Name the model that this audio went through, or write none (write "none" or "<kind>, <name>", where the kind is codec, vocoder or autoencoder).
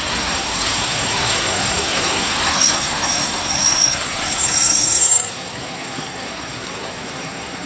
codec, SNAC